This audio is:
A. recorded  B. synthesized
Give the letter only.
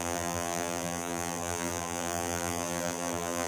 B